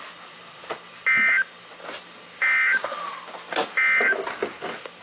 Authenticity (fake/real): real